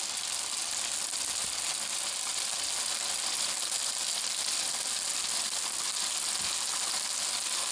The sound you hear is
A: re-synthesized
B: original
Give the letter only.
B